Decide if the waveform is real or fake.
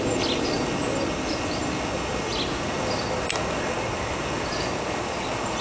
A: real